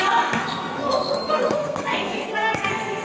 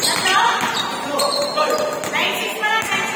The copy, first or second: first